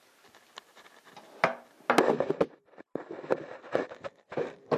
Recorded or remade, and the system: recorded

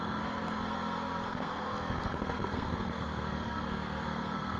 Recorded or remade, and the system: remade, codec, SNAC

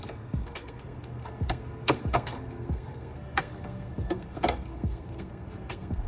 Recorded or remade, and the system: remade, codec, SNAC